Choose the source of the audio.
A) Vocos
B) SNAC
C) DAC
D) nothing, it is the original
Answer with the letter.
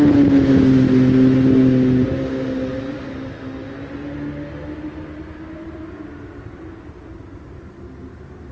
D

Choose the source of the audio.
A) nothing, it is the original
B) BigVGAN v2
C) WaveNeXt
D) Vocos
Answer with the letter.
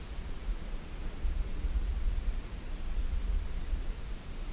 D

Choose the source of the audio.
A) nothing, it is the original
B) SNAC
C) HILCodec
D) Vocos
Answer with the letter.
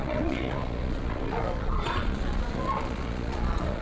D